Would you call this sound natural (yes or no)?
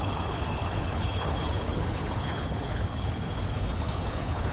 no